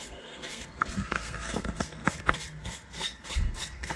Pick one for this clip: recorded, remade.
remade